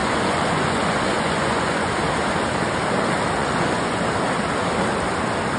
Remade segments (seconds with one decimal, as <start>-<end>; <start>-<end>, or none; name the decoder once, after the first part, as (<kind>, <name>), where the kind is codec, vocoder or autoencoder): 0.0-1.9 (vocoder, Vocos); 3.4-4.0